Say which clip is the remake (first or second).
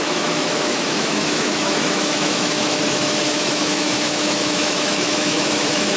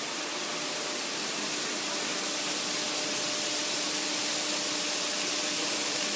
first